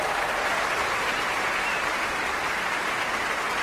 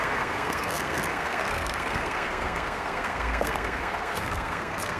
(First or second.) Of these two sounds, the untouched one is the first